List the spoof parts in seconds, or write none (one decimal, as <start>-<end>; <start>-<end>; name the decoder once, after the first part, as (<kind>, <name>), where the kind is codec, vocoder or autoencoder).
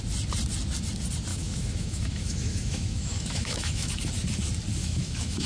1.3-3.9 (autoencoder, DAC-VAE); 4.8-5.5